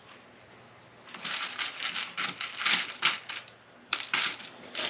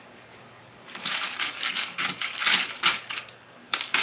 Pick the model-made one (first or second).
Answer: second